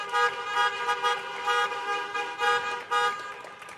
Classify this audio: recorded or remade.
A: recorded